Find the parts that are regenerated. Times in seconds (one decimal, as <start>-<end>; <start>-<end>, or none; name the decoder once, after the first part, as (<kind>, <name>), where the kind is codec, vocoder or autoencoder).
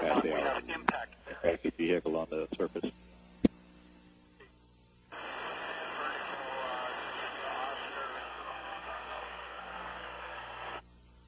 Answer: 1.2-1.8 (codec, SNAC); 8.2-10.8